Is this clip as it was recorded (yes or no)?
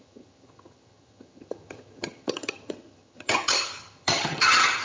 no